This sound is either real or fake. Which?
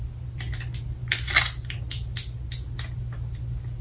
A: real